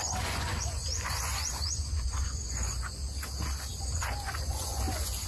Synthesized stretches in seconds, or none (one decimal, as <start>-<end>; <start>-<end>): 0.0-3.0; 3.7-5.3